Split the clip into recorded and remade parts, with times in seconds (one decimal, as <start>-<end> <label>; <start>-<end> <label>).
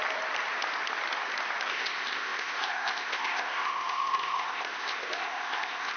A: 0.0-1.7 recorded; 1.7-6.0 remade